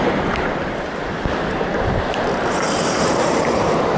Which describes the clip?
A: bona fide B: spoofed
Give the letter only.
B